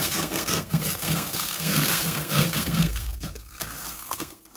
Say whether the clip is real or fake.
fake